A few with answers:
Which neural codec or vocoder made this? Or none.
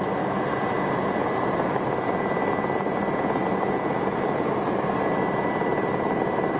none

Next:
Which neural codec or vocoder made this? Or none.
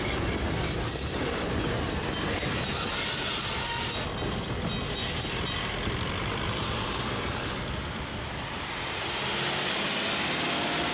none